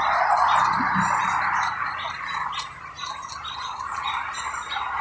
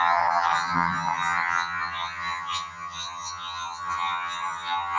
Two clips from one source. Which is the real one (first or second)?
first